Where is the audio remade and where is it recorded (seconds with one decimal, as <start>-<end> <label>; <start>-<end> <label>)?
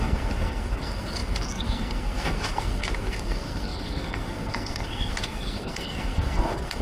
0.0-6.8 remade